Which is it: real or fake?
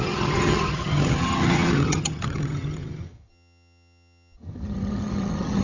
fake